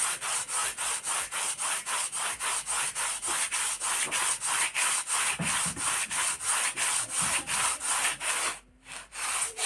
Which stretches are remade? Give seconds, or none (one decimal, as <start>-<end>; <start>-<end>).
none